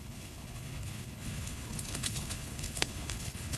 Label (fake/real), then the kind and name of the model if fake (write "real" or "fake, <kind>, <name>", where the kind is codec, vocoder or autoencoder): fake, codec, HILCodec